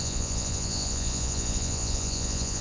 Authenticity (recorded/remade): remade